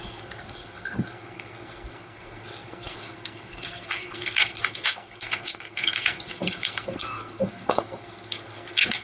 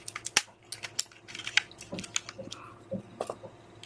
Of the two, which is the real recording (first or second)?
second